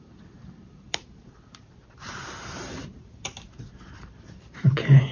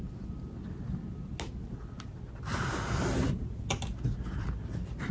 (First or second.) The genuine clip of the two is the second